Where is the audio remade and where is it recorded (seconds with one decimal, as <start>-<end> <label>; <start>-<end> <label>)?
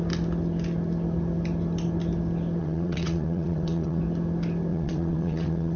0.0-2.6 recorded; 2.6-4.0 remade; 4.0-4.7 recorded; 4.7-5.8 remade